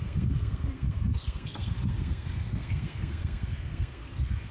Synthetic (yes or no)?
yes